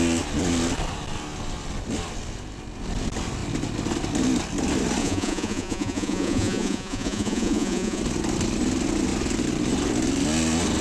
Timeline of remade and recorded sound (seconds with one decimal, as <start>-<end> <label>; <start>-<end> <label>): 0.0-5.0 recorded; 5.0-8.0 remade; 8.0-10.8 recorded